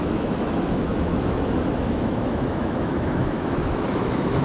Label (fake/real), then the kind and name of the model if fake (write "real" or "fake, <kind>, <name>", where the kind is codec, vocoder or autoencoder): fake, autoencoder, DAC-VAE